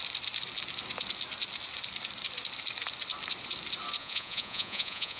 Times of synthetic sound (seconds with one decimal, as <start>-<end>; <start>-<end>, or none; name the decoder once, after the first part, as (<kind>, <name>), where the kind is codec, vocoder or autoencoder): 4.0-5.2 (vocoder, Vocos)